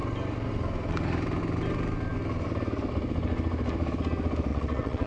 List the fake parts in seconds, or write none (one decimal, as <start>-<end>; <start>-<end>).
4.5-5.1